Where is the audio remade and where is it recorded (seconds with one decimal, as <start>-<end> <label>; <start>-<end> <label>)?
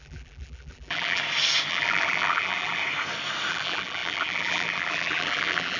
0.0-1.2 remade; 1.2-1.7 recorded; 1.7-2.8 remade; 2.8-3.5 recorded; 3.5-5.8 remade